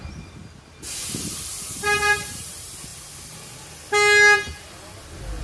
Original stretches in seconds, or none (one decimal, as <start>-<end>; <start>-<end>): 0.4-0.9; 2.9-5.4